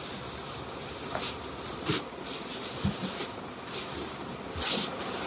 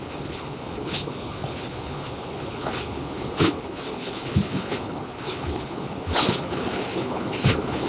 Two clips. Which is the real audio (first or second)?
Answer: first